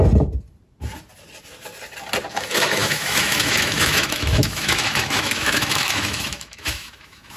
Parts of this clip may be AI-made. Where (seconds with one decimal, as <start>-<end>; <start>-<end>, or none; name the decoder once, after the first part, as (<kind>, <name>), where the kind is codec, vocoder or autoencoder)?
2.3-7.4 (autoencoder, DAC-VAE)